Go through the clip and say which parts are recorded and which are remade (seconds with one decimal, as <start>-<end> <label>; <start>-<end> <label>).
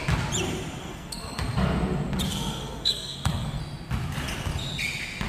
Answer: 0.0-0.8 recorded; 0.8-1.4 remade; 1.4-2.3 recorded; 2.3-3.6 remade; 3.6-5.3 recorded